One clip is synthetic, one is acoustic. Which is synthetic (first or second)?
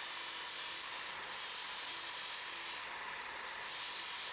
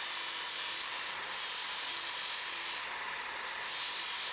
first